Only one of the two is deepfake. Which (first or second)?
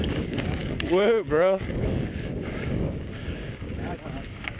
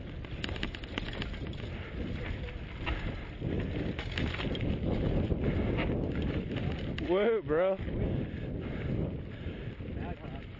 first